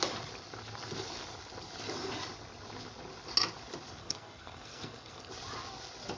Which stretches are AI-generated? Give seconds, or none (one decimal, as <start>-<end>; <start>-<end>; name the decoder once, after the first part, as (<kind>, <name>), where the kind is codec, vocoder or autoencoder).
4.0-5.3 (codec, SNAC)